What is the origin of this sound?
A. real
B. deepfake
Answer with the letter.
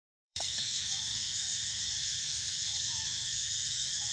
B